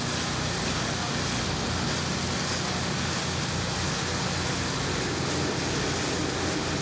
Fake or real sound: real